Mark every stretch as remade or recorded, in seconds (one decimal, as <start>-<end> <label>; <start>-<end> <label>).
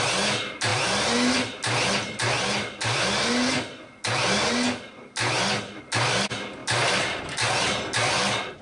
0.0-8.6 recorded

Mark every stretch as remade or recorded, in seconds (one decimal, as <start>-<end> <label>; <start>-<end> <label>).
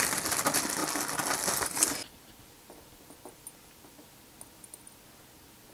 0.0-5.7 recorded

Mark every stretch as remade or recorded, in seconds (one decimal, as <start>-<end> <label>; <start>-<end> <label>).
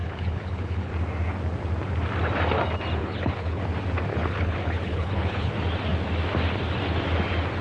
0.0-0.9 remade; 0.9-3.0 recorded; 3.0-3.6 remade; 3.6-4.1 recorded; 4.1-5.5 remade; 5.5-7.6 recorded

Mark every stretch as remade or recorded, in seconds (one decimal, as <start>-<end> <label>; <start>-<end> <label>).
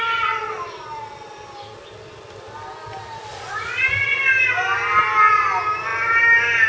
0.0-3.3 recorded; 3.3-4.2 remade; 4.2-6.7 recorded